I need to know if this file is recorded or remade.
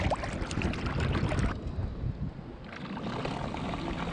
recorded